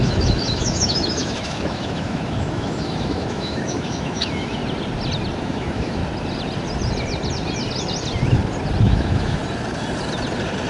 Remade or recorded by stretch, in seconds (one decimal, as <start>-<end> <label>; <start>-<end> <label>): 0.0-4.6 remade; 4.6-5.4 recorded; 5.4-6.0 remade; 6.0-8.8 recorded; 8.8-9.4 remade; 9.4-10.7 recorded